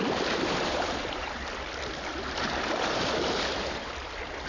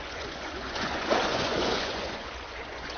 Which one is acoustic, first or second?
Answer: first